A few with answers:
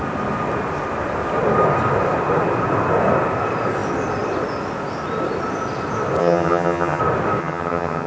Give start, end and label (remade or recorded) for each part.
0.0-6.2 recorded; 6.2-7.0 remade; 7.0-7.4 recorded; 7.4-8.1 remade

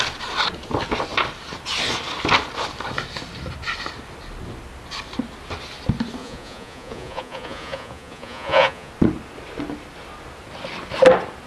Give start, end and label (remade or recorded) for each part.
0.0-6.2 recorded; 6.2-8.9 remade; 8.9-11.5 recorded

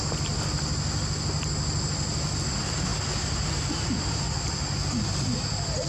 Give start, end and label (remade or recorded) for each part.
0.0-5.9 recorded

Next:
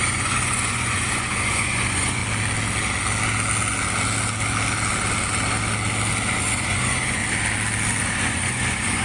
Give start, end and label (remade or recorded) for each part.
0.0-2.2 remade; 2.2-6.4 recorded; 6.4-7.2 remade; 7.2-8.1 recorded; 8.1-9.0 remade

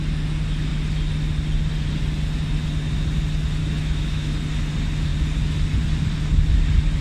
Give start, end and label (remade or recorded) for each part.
0.0-3.6 recorded; 3.6-4.3 remade; 4.3-7.0 recorded

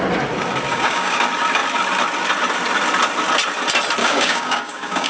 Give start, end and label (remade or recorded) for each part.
0.0-0.7 recorded; 0.7-1.2 remade; 1.2-4.0 recorded; 4.0-5.1 remade